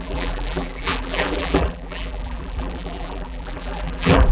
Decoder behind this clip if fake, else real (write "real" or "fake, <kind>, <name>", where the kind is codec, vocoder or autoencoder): fake, vocoder, BigVGAN v2